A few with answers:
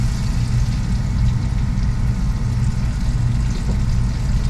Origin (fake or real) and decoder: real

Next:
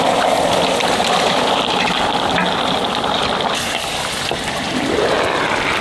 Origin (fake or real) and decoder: real